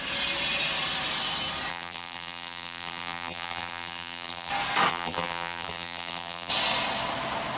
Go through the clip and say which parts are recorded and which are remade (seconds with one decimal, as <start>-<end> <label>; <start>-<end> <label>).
0.0-1.7 recorded; 1.7-4.5 remade; 4.5-4.9 recorded; 4.9-6.5 remade; 6.5-7.6 recorded